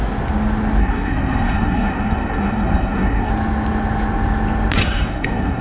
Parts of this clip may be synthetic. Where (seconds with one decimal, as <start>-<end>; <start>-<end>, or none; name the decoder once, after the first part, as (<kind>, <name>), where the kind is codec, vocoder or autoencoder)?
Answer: 0.8-3.3 (codec, SNAC); 4.8-5.6